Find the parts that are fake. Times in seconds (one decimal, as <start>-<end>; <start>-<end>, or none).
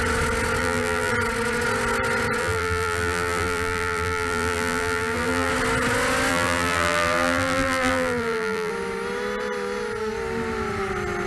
0.6-1.1; 2.4-5.5; 6.3-8.7